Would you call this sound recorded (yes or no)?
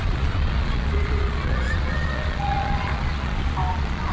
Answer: no